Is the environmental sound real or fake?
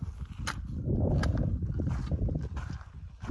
real